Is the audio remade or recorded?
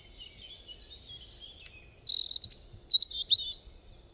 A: recorded